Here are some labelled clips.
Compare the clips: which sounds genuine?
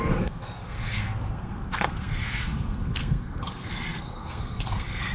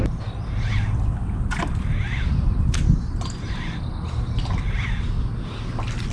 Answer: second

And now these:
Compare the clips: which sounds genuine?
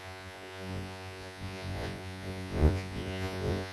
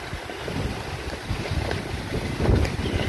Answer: second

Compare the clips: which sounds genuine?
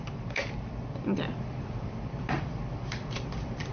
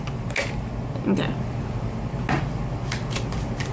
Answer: second